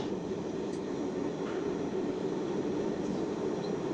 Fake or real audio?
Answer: real